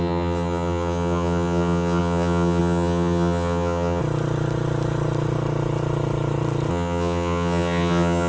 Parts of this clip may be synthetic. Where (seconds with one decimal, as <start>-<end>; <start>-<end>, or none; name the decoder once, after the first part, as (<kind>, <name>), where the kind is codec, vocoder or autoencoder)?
0.0-4.0 (vocoder, HiFi-GAN); 6.7-8.3